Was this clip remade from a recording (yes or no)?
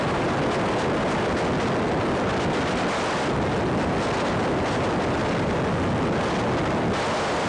no